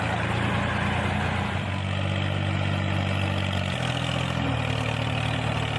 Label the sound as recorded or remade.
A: recorded